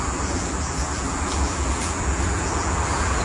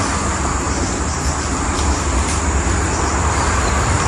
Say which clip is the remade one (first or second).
first